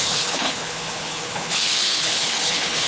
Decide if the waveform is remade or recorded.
remade